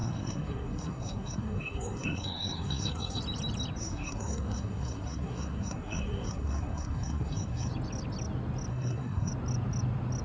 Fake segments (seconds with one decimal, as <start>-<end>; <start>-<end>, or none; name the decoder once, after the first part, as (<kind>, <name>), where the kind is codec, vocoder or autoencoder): 0.0-3.2 (codec, SNAC); 3.8-7.7; 8.7-9.3